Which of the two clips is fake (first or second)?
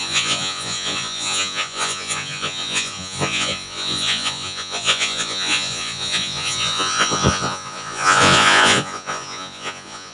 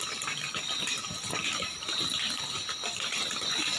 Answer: first